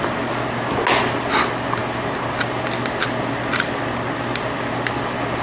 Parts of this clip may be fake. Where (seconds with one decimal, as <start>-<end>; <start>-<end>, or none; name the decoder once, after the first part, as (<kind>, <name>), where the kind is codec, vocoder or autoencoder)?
none